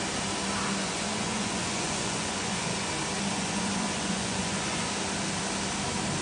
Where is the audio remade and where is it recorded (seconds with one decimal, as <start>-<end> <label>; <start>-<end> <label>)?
0.0-0.8 recorded; 0.8-2.9 remade; 2.9-3.3 recorded; 3.3-4.9 remade; 4.9-6.2 recorded